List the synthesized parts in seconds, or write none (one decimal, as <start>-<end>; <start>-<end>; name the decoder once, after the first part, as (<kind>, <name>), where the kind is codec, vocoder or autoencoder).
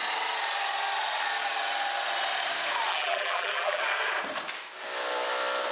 2.9-3.8 (vocoder, BigVGAN v2)